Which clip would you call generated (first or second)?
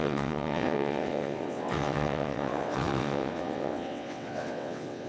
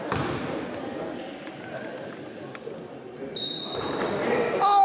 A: first